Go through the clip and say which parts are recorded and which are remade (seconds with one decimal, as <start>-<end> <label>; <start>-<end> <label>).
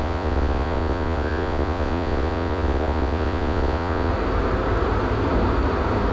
0.0-4.1 remade; 4.1-6.1 recorded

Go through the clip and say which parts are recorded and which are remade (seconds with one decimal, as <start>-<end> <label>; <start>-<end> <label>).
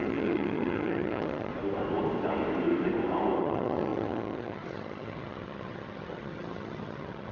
0.0-1.5 remade; 1.5-3.4 recorded; 3.4-7.3 remade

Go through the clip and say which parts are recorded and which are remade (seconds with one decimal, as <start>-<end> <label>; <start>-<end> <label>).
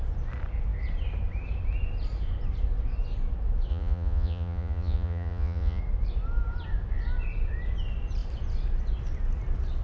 0.0-3.7 recorded; 3.7-5.8 remade; 5.8-9.8 recorded